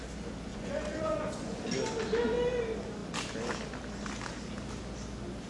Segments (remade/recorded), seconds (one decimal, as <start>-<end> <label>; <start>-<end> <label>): 0.0-0.5 recorded; 0.5-1.6 remade; 1.6-5.5 recorded